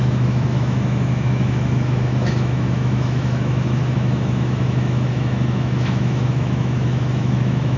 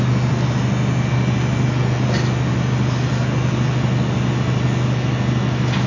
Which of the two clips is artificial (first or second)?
first